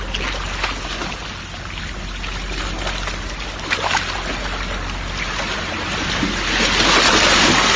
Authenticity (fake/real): real